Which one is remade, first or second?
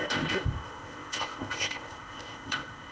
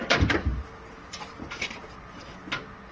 first